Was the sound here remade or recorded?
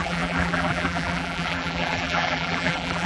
remade